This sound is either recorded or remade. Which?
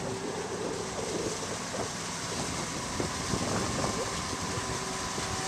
recorded